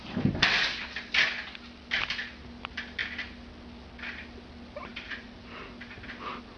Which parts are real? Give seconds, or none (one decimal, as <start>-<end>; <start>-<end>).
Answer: 0.0-4.9; 5.6-6.6